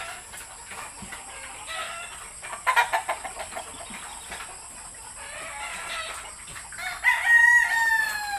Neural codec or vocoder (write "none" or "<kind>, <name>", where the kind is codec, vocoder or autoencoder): none